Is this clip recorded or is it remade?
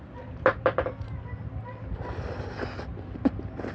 recorded